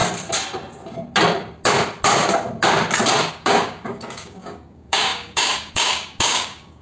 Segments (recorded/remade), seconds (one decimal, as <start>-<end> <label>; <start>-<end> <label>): 0.0-3.3 recorded; 3.3-6.8 remade